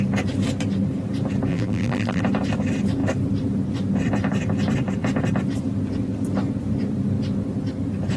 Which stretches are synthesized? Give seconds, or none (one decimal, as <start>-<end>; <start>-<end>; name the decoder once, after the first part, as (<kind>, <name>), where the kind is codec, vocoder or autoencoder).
1.5-2.2 (vocoder, BigVGAN v2)